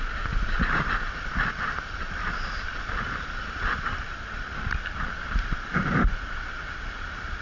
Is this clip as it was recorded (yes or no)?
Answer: yes